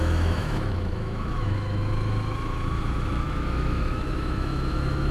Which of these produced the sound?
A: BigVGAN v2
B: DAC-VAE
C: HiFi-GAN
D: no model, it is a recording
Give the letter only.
B